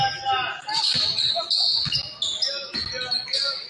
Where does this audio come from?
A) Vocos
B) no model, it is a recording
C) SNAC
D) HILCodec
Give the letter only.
B